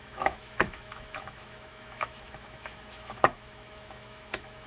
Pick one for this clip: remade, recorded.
remade